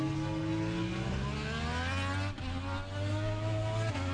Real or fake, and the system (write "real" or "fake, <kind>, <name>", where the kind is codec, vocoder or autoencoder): real